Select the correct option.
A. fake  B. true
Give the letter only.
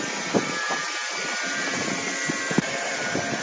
B